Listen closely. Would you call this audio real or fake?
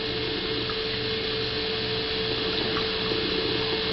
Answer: real